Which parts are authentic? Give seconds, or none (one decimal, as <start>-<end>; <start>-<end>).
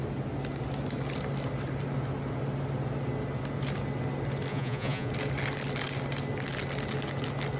0.0-4.5; 5.1-7.6